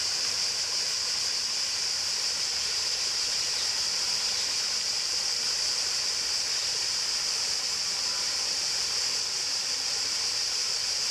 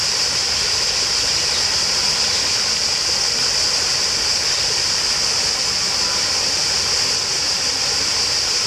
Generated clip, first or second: first